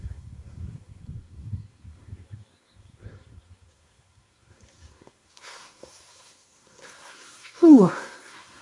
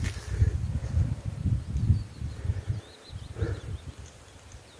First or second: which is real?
second